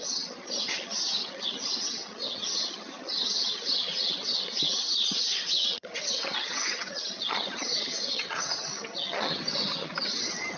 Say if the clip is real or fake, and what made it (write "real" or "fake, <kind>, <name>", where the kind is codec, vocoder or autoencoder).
fake, vocoder, HiFi-GAN